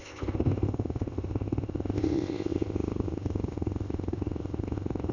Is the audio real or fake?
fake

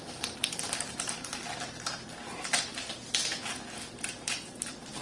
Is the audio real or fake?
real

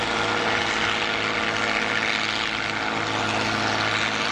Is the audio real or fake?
real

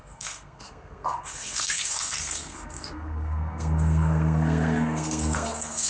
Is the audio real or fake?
fake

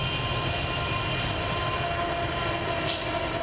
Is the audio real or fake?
real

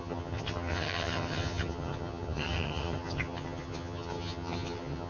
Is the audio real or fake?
fake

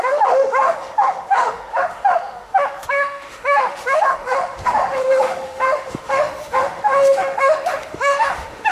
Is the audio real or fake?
fake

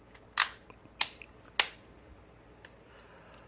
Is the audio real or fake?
real